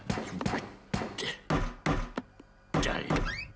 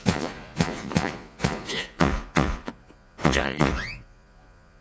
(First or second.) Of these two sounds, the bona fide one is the first